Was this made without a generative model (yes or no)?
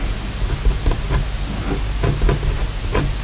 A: yes